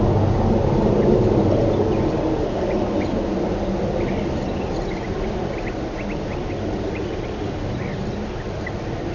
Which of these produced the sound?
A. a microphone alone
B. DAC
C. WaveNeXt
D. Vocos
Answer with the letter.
A